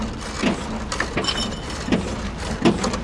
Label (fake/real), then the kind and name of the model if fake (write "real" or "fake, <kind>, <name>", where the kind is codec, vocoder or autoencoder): real